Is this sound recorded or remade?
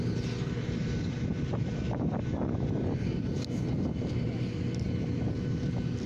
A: recorded